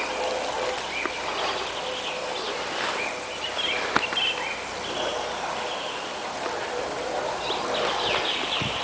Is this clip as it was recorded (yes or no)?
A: yes